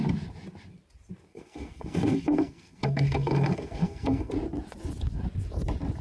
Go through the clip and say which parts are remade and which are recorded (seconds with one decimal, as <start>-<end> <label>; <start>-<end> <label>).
0.0-1.3 recorded; 1.3-4.3 remade; 4.3-6.0 recorded